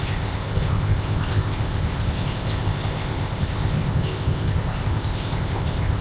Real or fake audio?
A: fake